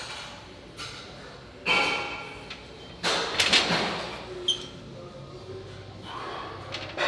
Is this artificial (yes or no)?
no